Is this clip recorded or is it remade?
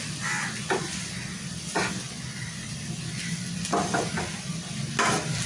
recorded